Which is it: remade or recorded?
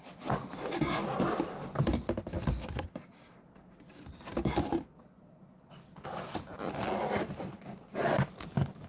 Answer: recorded